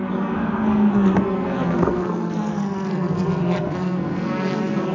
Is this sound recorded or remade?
remade